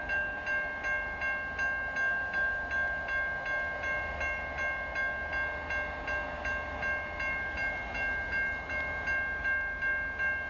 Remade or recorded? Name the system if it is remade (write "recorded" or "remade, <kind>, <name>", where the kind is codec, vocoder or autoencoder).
recorded